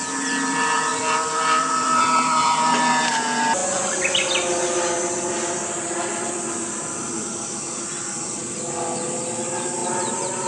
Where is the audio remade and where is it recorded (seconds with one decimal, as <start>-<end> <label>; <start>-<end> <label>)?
0.0-0.9 recorded; 0.9-2.0 remade; 2.0-9.8 recorded; 9.8-10.5 remade